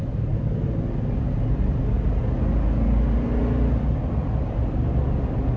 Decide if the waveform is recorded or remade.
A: recorded